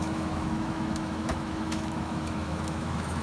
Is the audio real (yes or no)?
no